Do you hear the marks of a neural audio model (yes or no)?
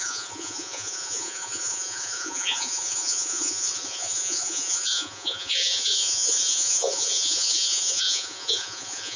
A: yes